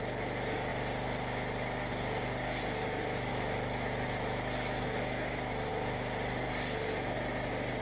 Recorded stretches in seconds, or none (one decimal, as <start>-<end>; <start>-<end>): 0.0-3.3; 5.7-7.8